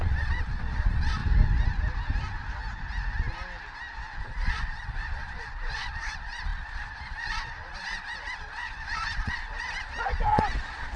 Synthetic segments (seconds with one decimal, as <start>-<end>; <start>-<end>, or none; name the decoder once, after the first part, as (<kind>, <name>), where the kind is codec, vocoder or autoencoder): 0.0-1.2 (vocoder, Vocos); 4.2-11.0